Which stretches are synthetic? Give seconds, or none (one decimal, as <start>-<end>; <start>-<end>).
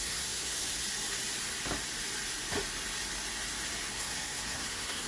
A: 0.0-0.8; 3.9-5.1